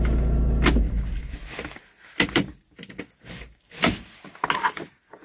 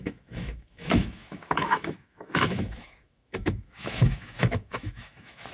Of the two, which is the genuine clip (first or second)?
first